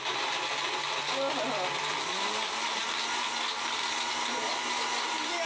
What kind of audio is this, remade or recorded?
recorded